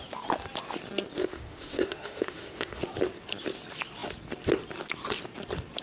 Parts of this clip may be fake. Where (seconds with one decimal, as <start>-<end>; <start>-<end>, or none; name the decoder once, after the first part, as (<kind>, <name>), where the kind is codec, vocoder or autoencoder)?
1.2-2.8 (autoencoder, DAC-VAE)